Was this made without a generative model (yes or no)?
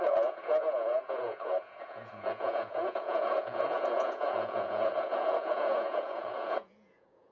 no